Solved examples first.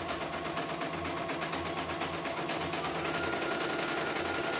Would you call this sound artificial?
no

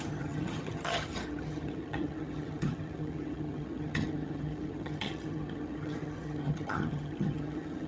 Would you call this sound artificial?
yes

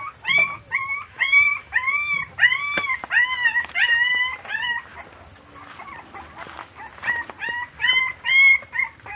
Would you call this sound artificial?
no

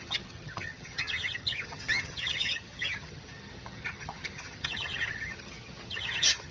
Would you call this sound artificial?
yes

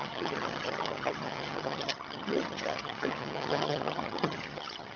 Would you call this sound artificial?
yes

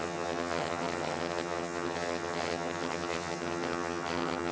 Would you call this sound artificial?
yes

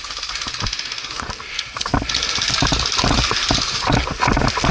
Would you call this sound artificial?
no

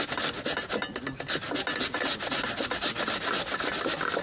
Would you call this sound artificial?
no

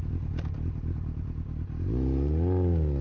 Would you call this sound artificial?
no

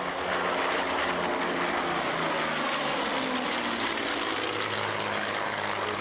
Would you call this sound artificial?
no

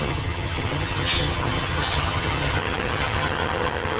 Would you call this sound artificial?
yes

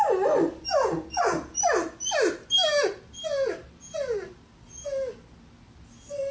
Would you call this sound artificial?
no